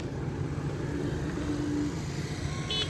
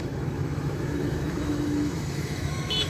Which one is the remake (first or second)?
second